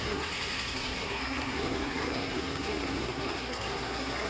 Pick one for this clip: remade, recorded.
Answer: remade